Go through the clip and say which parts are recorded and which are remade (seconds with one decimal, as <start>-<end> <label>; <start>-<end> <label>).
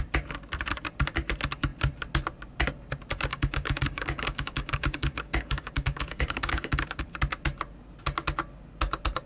0.0-3.3 recorded; 3.3-7.0 remade; 7.0-9.3 recorded